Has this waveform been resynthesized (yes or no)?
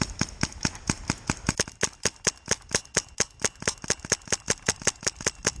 no